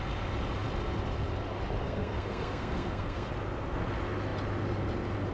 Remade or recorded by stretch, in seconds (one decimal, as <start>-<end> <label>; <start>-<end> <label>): 0.0-1.8 recorded; 1.8-3.3 remade; 3.3-5.3 recorded